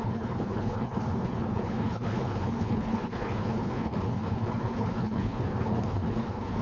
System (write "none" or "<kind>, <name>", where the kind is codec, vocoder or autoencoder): codec, HILCodec